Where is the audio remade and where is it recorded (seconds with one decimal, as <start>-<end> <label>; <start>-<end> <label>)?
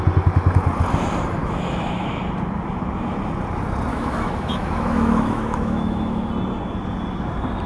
0.0-1.4 recorded; 1.4-2.2 remade; 2.2-3.9 recorded; 3.9-6.3 remade; 6.3-7.7 recorded